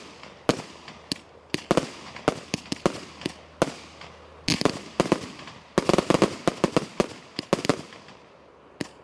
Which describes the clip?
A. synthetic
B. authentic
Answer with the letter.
B